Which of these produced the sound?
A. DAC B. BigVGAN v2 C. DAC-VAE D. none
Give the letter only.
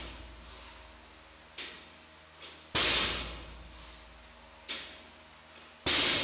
D